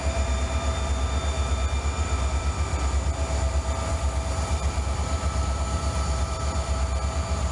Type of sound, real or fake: fake